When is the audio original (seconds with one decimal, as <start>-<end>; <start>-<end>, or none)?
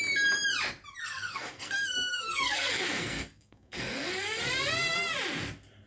0.0-1.0; 4.5-5.9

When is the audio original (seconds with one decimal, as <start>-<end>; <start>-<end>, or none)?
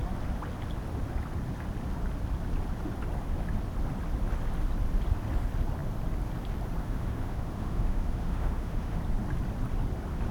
0.0-6.8; 9.0-10.3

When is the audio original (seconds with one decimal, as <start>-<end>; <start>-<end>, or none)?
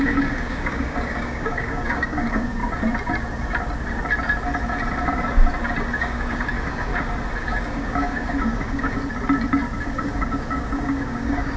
2.6-6.0; 6.9-7.4; 9.0-9.8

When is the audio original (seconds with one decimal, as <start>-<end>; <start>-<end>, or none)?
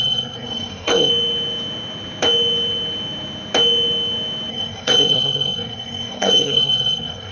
1.1-4.5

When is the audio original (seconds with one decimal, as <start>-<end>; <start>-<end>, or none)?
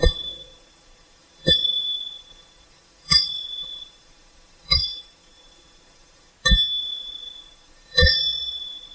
6.3-6.8